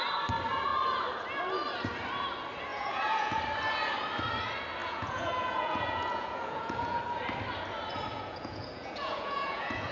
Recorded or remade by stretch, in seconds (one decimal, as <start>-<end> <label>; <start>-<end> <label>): 0.0-2.7 recorded; 2.7-3.4 remade; 3.4-4.8 recorded; 4.8-7.0 remade; 7.0-8.1 recorded; 8.1-9.9 remade

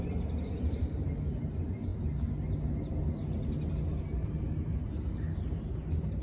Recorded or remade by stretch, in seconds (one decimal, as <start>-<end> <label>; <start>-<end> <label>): 0.0-6.2 recorded